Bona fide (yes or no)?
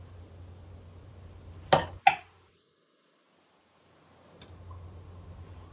yes